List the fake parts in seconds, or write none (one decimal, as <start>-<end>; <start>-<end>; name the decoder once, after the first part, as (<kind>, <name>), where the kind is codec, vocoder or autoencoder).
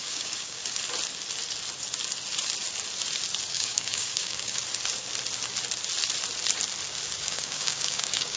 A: 0.0-0.6 (codec, DAC); 3.5-4.6; 7.2-8.4